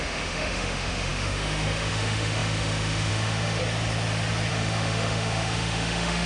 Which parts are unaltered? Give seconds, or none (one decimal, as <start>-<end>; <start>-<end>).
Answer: 3.6-4.5